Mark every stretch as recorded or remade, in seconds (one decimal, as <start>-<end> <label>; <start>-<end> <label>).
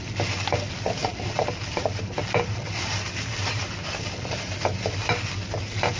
0.0-1.0 recorded; 1.0-4.6 remade; 4.6-6.0 recorded